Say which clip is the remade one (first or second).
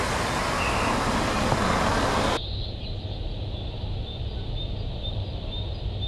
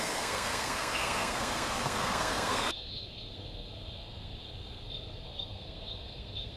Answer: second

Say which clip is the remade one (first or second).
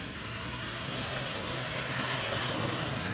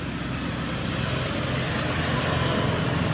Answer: first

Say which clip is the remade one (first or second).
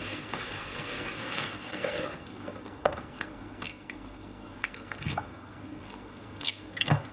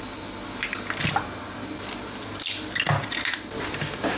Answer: first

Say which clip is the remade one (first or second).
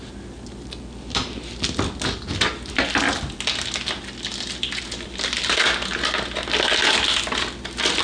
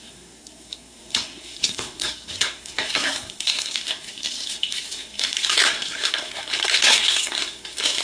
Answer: second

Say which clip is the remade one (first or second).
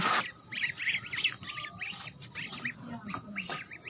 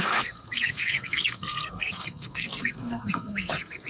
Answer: second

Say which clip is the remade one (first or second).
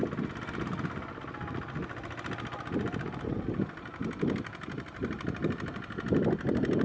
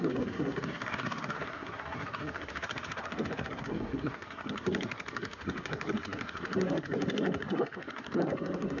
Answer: second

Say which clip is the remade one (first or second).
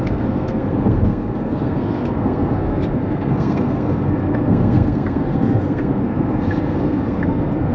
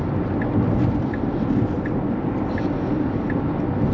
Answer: first